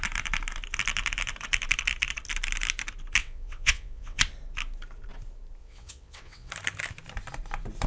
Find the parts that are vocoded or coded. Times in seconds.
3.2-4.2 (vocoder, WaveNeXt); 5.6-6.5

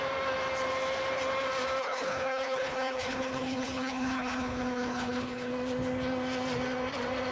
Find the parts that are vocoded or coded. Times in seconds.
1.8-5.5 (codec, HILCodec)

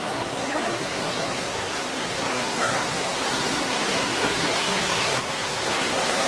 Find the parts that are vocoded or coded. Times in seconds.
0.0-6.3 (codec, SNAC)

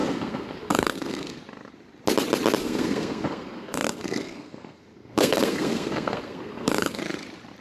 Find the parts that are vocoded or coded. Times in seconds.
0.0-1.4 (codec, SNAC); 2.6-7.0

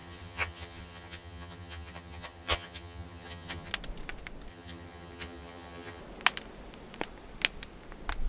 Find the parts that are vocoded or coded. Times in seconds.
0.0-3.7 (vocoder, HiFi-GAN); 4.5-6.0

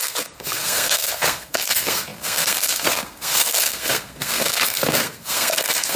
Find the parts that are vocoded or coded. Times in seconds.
0.0-6.0 (codec, SNAC)

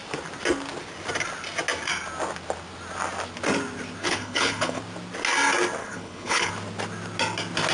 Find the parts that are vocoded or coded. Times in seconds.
4.0-4.8 (codec, HILCodec); 5.8-6.5

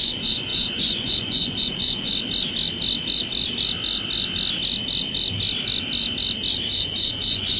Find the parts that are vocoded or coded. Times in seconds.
0.0-2.1 (vocoder, Vocos); 6.7-7.6